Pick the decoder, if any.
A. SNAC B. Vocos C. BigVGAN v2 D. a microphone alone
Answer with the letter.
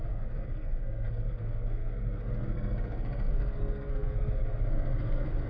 A